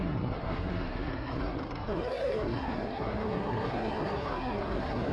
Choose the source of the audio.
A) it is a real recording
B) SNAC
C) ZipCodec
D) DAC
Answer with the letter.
B